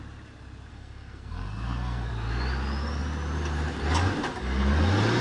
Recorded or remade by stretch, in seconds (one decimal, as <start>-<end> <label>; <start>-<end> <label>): 0.0-0.7 recorded; 0.7-2.1 remade; 2.1-5.2 recorded